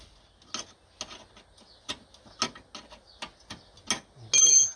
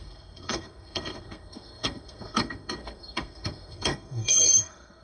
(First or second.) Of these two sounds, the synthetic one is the second